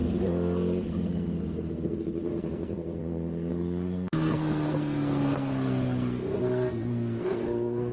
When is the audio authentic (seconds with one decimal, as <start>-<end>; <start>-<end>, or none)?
none